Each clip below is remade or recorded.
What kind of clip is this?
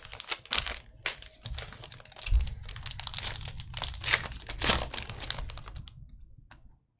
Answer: recorded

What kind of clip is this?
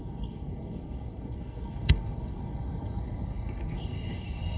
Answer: remade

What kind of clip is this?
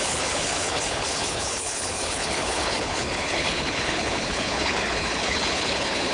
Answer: remade